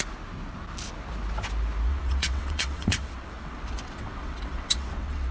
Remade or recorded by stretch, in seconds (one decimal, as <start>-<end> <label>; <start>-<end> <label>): 0.0-1.9 recorded; 1.9-5.3 remade